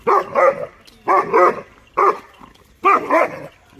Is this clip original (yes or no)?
yes